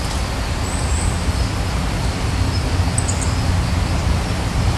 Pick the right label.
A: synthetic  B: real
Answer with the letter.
B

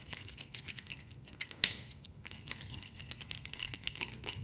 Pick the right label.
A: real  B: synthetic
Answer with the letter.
B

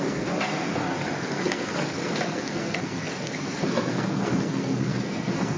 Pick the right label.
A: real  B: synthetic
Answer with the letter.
B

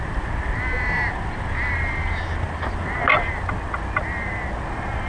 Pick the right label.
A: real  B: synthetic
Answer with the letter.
A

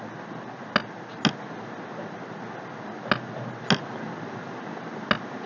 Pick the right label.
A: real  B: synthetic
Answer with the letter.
A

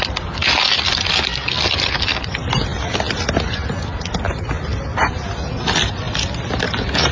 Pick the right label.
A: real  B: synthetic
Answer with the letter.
A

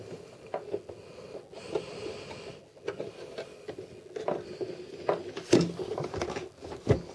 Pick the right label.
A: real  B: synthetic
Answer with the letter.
A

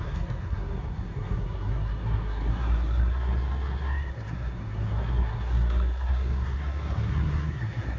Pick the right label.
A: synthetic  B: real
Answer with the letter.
A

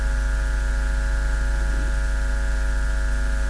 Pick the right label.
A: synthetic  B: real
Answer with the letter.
B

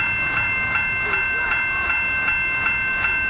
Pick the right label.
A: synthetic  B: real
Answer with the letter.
B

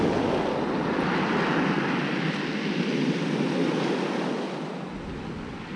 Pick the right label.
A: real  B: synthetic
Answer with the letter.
A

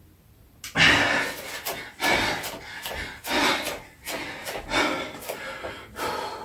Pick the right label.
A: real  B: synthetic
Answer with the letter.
A